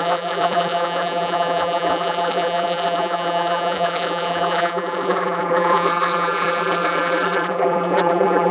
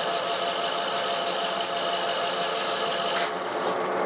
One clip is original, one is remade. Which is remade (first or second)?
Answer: first